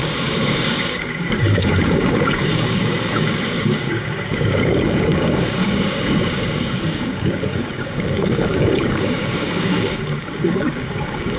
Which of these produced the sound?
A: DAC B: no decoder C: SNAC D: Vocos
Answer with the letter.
A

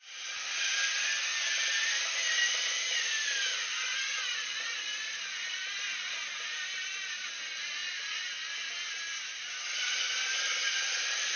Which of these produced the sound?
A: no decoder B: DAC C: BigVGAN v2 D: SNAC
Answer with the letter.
A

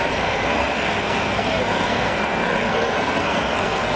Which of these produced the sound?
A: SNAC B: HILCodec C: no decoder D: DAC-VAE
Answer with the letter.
A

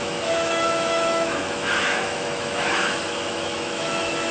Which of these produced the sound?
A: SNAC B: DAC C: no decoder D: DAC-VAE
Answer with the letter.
D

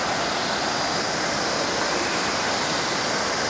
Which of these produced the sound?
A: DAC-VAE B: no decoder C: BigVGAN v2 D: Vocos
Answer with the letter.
B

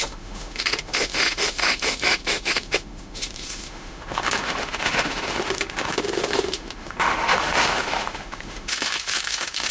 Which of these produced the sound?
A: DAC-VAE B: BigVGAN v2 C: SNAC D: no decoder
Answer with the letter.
A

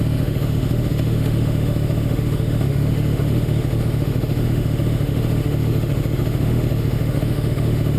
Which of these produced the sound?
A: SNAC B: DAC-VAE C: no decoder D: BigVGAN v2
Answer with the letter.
B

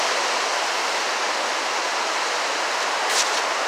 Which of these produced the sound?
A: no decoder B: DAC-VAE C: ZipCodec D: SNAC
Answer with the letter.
A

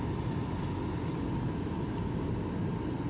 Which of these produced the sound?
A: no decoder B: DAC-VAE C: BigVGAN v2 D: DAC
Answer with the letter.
A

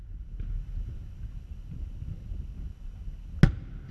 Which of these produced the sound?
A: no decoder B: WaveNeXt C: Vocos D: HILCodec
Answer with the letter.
A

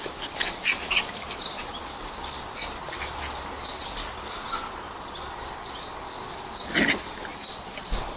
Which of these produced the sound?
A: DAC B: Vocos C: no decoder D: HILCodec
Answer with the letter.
C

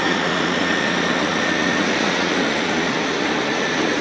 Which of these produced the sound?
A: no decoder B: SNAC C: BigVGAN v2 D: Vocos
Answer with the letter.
D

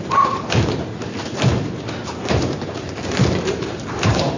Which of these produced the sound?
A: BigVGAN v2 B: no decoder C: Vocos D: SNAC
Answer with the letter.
A